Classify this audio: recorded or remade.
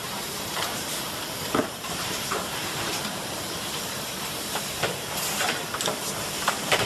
remade